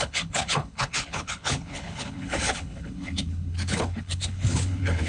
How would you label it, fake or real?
fake